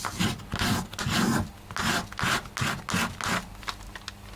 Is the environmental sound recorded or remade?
recorded